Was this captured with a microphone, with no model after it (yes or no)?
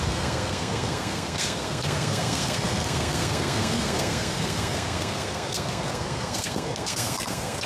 no